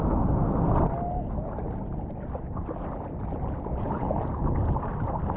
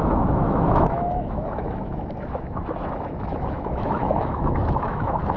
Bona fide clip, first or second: first